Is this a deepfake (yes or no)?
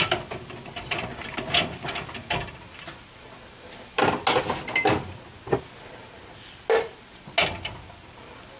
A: no